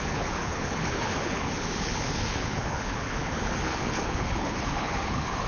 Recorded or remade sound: remade